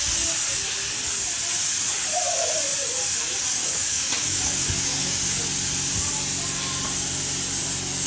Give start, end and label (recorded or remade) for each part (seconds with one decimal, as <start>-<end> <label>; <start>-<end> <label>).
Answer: 0.0-3.6 recorded; 3.6-5.2 remade; 5.2-8.1 recorded